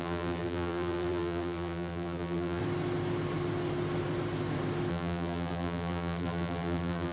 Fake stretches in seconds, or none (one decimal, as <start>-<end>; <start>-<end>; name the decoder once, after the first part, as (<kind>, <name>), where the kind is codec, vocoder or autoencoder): 0.0-2.6 (vocoder, BigVGAN v2); 4.9-7.1